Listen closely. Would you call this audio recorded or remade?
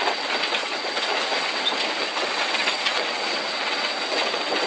remade